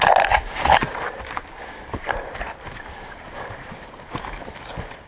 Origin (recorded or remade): recorded